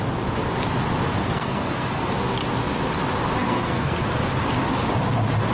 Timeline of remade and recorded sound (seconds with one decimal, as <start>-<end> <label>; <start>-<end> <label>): 0.0-1.2 recorded; 1.2-2.1 remade; 2.1-3.4 recorded; 3.4-4.0 remade; 4.0-5.5 recorded